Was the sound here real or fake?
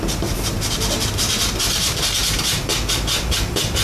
fake